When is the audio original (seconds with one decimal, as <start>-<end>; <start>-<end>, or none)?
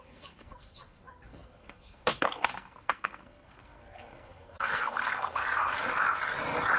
5.4-6.8